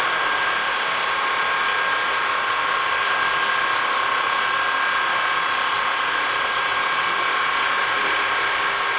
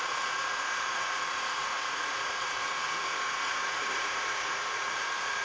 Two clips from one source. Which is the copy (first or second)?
second